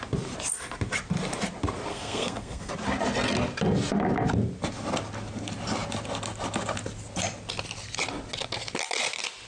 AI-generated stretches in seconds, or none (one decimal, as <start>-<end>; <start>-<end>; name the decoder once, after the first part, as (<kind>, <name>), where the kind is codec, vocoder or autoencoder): 1.9-2.7 (codec, SNAC)